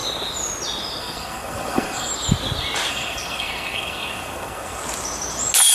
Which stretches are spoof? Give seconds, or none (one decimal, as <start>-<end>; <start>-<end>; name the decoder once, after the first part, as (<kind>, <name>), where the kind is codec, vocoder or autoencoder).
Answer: 1.0-2.1 (codec, SNAC); 2.9-4.8